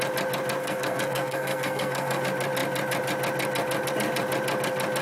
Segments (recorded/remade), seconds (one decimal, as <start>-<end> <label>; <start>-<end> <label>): 0.0-0.6 recorded; 0.6-2.2 remade; 2.2-5.0 recorded